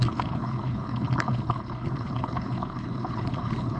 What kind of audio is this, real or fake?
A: fake